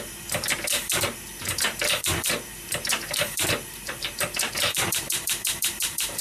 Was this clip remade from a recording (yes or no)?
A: yes